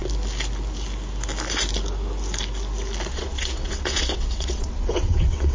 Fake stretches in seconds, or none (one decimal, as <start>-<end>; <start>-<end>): 3.1-5.5

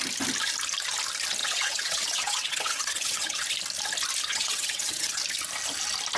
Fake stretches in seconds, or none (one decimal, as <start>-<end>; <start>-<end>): 1.4-3.4; 4.3-5.2

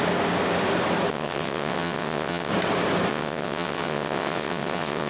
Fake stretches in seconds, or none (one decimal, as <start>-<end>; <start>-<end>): 1.1-2.5; 3.1-5.1